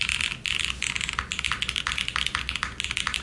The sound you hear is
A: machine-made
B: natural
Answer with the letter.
B